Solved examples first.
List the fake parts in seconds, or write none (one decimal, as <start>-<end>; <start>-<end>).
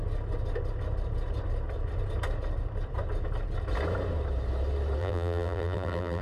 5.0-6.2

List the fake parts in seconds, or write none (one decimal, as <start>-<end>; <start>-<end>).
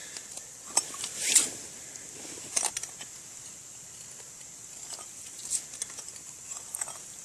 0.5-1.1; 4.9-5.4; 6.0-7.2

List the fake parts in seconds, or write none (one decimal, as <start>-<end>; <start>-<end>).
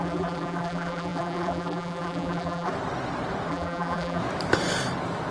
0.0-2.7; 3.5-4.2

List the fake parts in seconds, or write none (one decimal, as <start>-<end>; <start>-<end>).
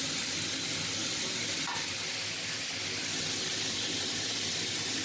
1.0-2.3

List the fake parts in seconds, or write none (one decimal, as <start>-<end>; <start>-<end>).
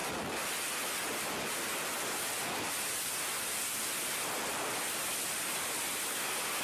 none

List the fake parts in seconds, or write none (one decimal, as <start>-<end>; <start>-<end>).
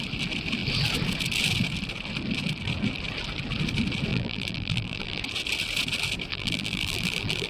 4.1-5.2; 6.3-7.5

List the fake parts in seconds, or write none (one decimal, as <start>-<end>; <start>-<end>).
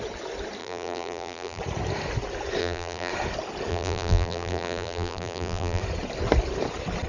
0.6-1.6; 2.6-3.1; 3.7-5.8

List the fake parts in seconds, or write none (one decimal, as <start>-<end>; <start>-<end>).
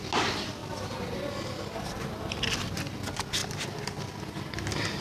3.4-4.2